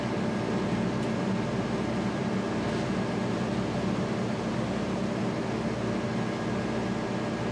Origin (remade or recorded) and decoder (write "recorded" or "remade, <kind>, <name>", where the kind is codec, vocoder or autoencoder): recorded